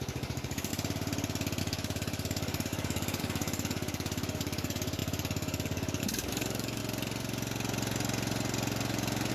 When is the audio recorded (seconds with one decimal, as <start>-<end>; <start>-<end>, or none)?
0.7-1.6; 6.8-9.3